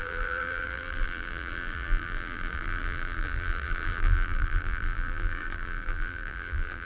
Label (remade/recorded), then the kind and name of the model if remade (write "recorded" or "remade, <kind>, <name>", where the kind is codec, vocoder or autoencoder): remade, vocoder, BigVGAN v2